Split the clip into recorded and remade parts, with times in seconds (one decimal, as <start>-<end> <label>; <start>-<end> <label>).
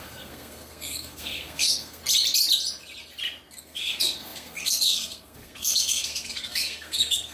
0.0-2.0 remade; 2.0-3.6 recorded; 3.6-7.3 remade